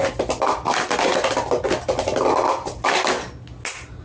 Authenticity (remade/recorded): recorded